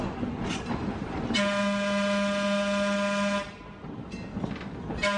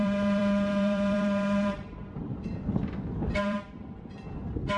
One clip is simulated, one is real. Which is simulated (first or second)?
second